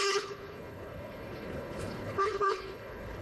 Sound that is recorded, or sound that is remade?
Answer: remade